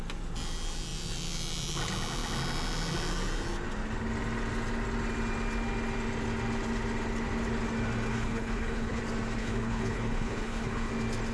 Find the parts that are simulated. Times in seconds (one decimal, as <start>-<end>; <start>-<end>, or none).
8.1-9.0; 9.4-10.9